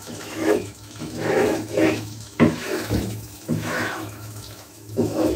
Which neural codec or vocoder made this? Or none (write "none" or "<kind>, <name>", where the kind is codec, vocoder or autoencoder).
autoencoder, DAC-VAE